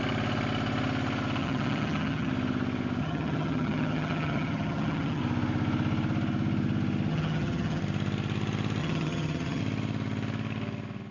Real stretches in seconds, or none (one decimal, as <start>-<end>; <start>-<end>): 0.0-1.4; 2.3-3.0; 5.2-7.1; 7.8-8.8; 9.6-11.1